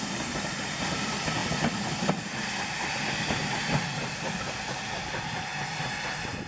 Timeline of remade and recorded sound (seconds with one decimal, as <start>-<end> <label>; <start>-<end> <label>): 0.0-6.5 recorded